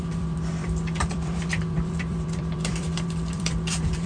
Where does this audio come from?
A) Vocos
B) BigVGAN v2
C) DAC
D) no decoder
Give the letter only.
B